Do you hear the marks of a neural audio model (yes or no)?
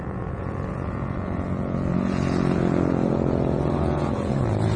yes